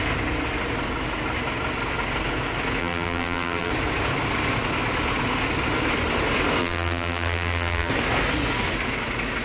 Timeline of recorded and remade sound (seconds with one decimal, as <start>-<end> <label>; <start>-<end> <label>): 0.0-2.8 recorded; 2.8-3.7 remade; 3.7-6.6 recorded; 6.6-7.9 remade; 7.9-9.4 recorded